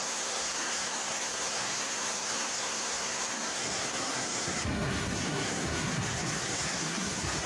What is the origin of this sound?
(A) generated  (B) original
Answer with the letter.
A